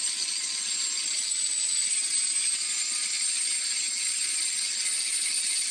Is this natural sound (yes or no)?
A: yes